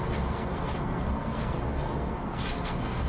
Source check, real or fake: fake